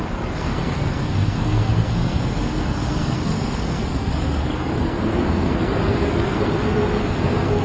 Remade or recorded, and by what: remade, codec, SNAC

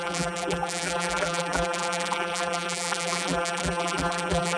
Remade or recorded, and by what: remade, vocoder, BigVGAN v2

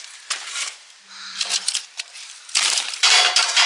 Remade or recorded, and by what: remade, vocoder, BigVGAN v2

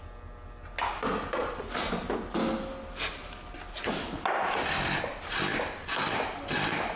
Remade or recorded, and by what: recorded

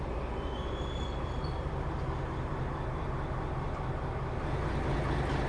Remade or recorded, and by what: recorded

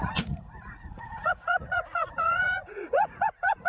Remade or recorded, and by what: remade, vocoder, Vocos